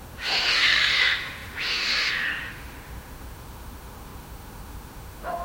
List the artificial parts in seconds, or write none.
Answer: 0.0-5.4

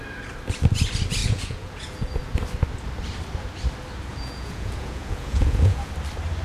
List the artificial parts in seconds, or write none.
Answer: 1.2-2.2; 4.1-5.9

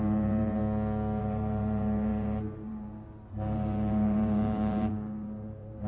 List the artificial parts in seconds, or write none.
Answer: 0.0-0.6; 1.2-5.9

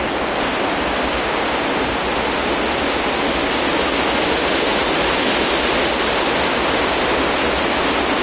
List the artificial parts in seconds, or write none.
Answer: none

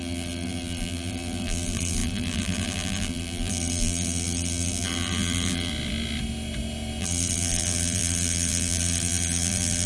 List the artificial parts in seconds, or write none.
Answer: 0.0-5.7; 7.0-9.9

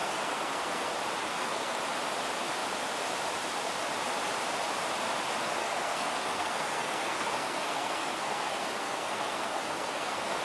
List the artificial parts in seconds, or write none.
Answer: 0.0-0.9; 1.3-1.8; 5.6-10.4

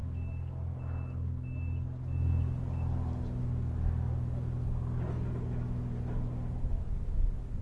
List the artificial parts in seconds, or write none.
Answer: none